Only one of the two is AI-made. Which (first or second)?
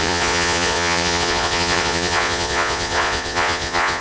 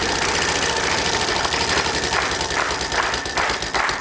first